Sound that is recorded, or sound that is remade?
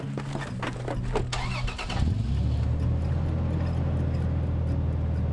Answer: recorded